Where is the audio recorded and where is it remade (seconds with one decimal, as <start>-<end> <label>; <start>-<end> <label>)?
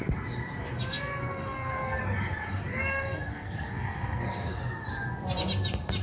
0.0-0.9 recorded; 0.9-2.0 remade; 2.0-2.7 recorded; 2.7-4.6 remade; 4.6-6.0 recorded